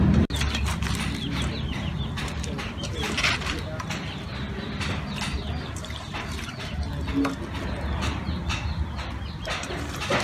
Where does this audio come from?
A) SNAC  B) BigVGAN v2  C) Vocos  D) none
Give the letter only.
D